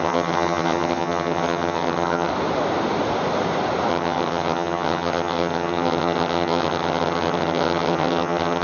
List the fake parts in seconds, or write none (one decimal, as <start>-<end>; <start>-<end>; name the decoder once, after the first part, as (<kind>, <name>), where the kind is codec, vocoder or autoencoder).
0.0-2.3 (vocoder, HiFi-GAN); 3.9-8.6